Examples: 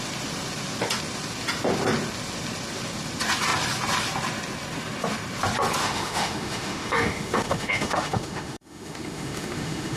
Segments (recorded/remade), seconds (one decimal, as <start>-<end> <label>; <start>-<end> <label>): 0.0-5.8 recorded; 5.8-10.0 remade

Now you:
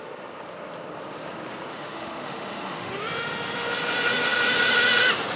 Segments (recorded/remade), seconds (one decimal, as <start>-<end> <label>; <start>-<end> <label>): 0.0-1.7 recorded; 1.7-2.9 remade; 2.9-5.4 recorded

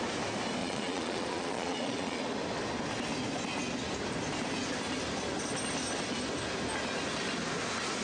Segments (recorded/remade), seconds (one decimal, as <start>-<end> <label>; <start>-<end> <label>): 0.0-0.6 recorded; 0.6-2.2 remade; 2.2-8.0 recorded

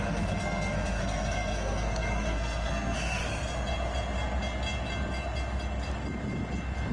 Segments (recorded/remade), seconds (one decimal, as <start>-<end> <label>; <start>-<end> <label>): 0.0-3.3 remade; 3.3-6.9 recorded